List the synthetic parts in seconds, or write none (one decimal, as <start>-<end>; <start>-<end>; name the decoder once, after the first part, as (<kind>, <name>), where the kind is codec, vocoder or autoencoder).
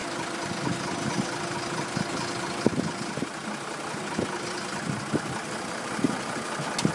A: none